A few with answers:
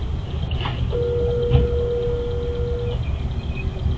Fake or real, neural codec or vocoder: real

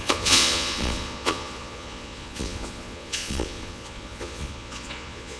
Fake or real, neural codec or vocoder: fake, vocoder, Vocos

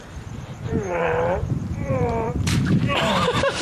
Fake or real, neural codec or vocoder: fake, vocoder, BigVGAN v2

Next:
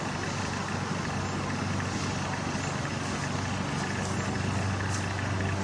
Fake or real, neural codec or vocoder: real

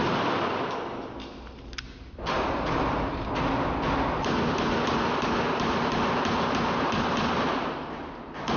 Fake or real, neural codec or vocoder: real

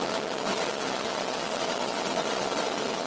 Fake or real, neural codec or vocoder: fake, vocoder, WaveNeXt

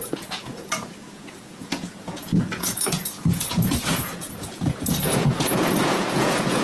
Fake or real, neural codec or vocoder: fake, vocoder, Vocos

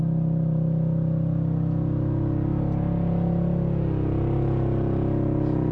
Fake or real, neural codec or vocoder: real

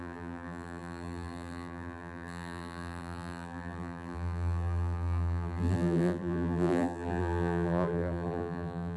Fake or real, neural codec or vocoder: fake, vocoder, BigVGAN v2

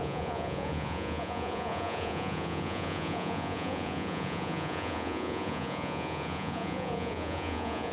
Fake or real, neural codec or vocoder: fake, vocoder, Vocos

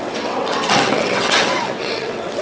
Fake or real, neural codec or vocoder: fake, vocoder, WaveNeXt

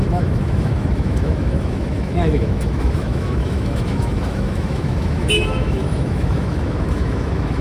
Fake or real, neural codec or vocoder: fake, autoencoder, DAC-VAE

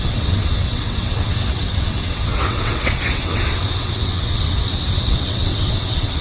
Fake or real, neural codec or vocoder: fake, vocoder, WaveNeXt